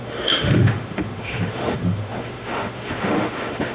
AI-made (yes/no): yes